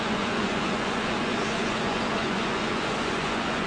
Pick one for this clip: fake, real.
fake